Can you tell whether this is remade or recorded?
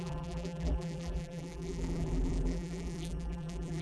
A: remade